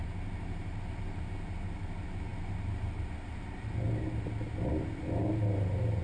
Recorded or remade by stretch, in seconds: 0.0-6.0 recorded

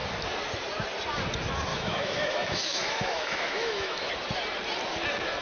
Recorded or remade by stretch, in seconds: 0.0-1.7 recorded; 1.7-4.1 remade; 4.1-5.4 recorded

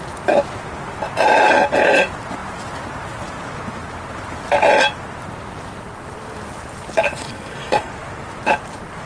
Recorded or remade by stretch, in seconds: 0.0-7.1 recorded; 7.1-7.9 remade; 7.9-9.1 recorded